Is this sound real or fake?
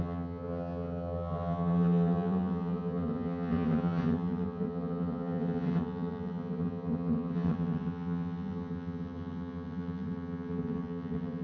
fake